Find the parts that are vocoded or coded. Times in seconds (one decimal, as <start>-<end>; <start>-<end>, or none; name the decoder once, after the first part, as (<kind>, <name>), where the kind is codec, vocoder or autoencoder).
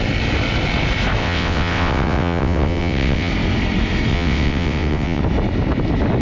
1.2-3.3 (vocoder, WaveNeXt); 4.1-5.2